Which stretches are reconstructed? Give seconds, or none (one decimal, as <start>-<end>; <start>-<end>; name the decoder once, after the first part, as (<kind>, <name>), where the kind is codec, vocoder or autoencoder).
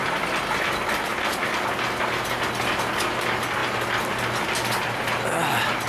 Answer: none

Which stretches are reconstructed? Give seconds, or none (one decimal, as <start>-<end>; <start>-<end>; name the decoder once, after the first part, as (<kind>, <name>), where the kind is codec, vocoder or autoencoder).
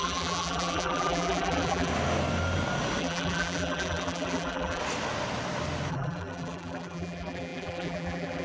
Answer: 0.0-1.9 (vocoder, BigVGAN v2); 3.0-4.8; 5.9-8.4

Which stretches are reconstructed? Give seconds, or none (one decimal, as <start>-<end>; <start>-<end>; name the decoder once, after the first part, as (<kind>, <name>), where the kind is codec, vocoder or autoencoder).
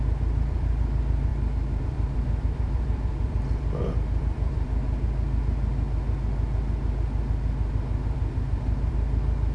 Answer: 0.0-1.3 (vocoder, BigVGAN v2); 1.8-4.8; 7.7-9.5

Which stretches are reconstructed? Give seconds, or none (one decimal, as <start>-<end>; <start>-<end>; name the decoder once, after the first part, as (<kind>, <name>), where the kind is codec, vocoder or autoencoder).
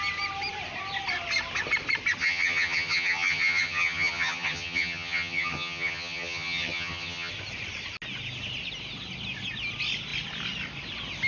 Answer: 2.2-7.3 (vocoder, HiFi-GAN)